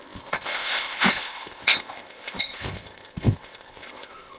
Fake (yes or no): yes